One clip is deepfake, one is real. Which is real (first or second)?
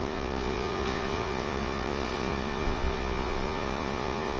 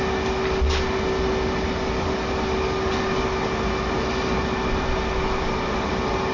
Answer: second